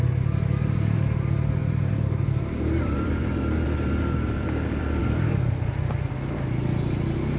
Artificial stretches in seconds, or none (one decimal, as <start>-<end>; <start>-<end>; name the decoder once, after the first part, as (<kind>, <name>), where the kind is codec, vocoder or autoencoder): 1.6-5.2 (vocoder, BigVGAN v2)